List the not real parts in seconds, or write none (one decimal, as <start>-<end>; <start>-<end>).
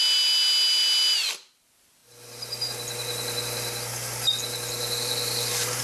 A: none